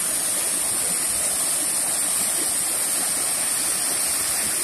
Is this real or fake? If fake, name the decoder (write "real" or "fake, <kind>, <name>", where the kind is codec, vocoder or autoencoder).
real